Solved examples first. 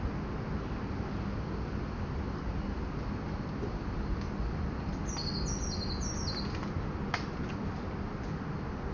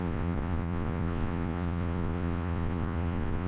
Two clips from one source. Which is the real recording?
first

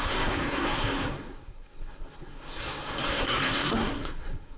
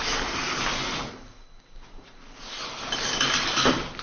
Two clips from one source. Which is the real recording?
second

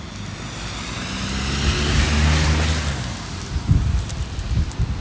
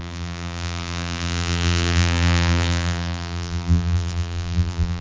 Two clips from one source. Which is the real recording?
first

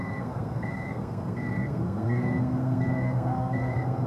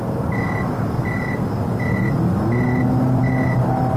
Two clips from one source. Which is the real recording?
second